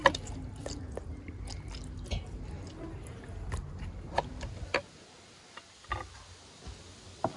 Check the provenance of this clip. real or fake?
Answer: real